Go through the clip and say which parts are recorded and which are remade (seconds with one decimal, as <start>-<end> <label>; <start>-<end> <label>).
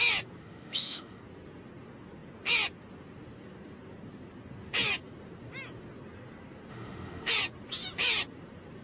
0.0-0.4 recorded; 0.4-1.2 remade; 1.2-6.7 recorded; 6.7-7.3 remade; 7.3-8.8 recorded